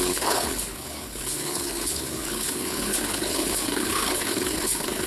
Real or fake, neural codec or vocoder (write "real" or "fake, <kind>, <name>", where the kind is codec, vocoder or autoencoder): fake, codec, HILCodec